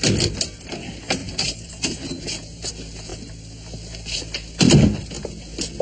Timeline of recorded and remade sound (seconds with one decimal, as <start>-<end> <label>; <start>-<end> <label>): 0.0-1.2 recorded; 1.2-2.7 remade; 2.7-5.8 recorded